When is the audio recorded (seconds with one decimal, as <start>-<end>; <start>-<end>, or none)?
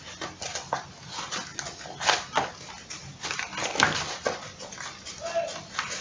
0.0-6.0